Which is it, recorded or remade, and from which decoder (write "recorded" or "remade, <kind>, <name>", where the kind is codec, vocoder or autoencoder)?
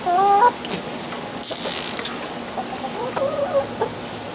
recorded